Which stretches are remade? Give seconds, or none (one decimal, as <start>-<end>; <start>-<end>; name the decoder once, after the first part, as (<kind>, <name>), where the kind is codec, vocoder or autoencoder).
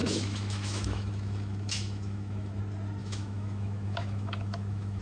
0.0-2.6 (autoencoder, DAC-VAE); 3.0-5.0